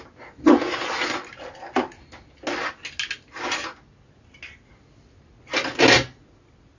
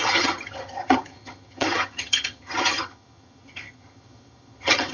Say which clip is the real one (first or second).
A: first